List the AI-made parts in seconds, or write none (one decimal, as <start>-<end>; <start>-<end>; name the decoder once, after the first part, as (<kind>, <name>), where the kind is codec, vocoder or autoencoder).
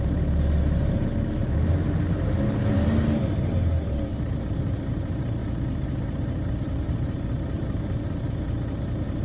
2.6-3.3 (vocoder, BigVGAN v2); 4.1-5.0; 5.4-8.3